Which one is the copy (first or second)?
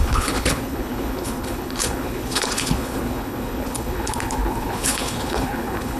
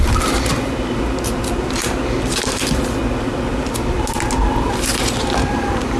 first